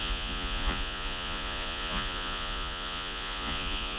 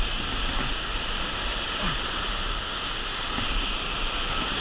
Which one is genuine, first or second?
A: second